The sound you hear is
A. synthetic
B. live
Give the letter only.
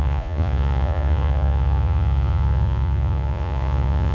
A